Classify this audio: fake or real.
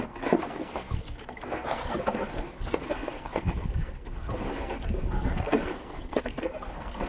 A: fake